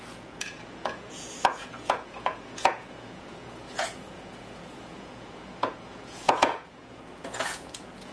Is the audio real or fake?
fake